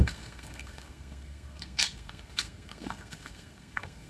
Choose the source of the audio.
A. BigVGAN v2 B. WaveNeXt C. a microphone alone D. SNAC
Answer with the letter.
D